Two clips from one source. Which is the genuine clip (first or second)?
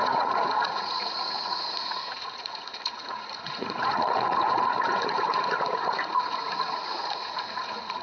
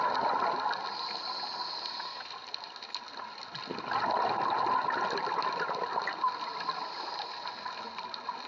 second